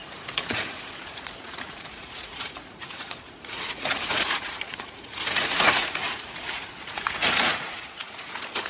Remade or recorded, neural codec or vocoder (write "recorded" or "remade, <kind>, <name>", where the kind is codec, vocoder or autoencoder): remade, vocoder, Vocos